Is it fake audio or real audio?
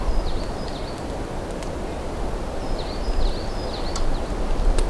real